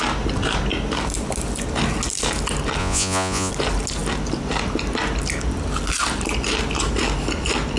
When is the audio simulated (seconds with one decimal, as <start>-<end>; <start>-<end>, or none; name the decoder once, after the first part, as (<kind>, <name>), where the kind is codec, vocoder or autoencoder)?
2.8-3.5 (vocoder, Vocos)